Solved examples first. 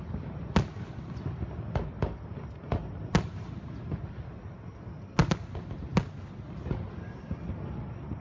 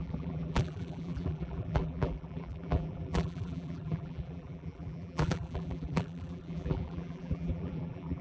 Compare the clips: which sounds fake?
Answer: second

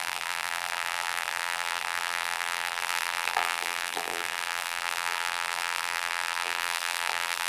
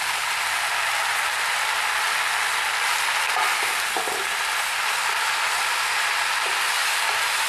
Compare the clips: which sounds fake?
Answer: first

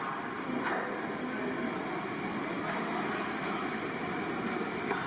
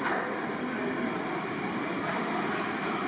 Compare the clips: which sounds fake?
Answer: second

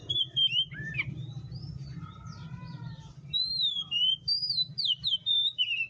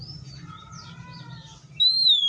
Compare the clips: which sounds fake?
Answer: first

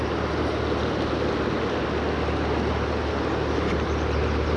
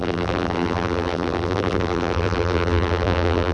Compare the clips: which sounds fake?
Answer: second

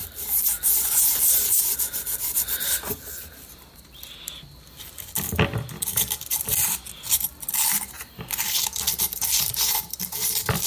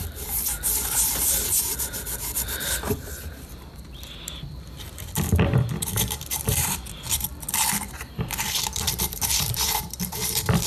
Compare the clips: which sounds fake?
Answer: second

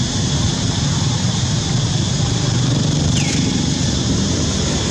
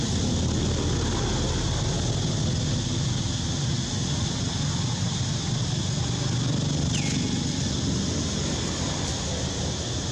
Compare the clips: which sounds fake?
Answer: first